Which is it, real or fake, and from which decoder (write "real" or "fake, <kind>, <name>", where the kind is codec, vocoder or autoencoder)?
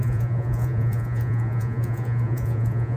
fake, vocoder, Vocos